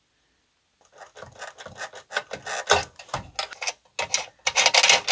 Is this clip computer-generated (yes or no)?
no